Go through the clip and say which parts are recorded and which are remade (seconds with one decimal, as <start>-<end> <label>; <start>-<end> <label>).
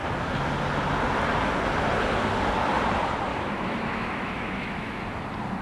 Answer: 0.0-3.3 recorded; 3.3-5.0 remade; 5.0-5.6 recorded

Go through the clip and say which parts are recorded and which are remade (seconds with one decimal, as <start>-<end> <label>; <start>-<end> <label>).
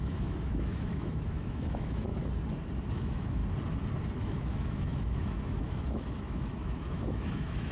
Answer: 0.0-2.1 remade; 2.1-2.9 recorded; 2.9-3.4 remade; 3.4-4.2 recorded; 4.2-7.7 remade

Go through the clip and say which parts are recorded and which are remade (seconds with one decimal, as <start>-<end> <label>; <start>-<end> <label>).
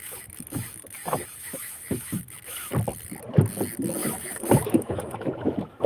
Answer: 0.0-2.7 remade; 2.7-4.0 recorded; 4.0-5.9 remade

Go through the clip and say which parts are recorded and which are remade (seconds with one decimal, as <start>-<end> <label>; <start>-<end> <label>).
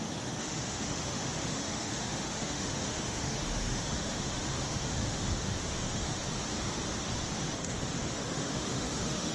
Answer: 0.0-6.2 remade; 6.2-7.6 recorded; 7.6-9.3 remade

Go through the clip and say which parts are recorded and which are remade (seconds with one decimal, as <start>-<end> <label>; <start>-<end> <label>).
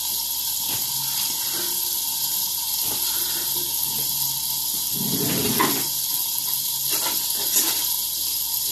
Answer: 0.0-8.7 recorded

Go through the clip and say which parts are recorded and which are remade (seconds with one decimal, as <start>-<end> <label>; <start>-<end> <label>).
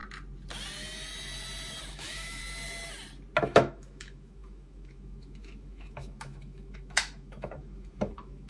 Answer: 0.0-1.9 recorded; 1.9-2.4 remade; 2.4-3.4 recorded; 3.4-8.5 remade